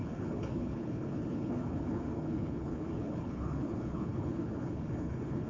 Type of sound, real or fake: fake